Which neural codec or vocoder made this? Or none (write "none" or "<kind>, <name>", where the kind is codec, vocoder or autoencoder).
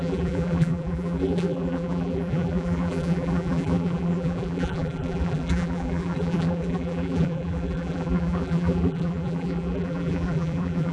vocoder, BigVGAN v2